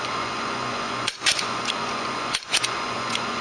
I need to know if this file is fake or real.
fake